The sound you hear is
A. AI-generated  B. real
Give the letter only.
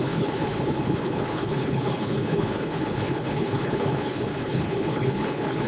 A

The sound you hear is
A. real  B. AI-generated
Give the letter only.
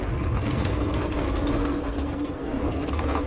B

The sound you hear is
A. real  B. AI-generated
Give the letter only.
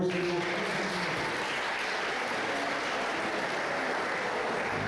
A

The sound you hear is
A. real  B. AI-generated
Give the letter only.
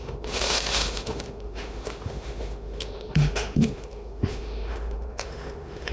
B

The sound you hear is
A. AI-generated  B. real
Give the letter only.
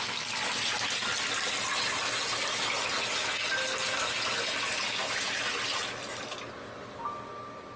B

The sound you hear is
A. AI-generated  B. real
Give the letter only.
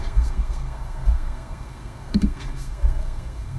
A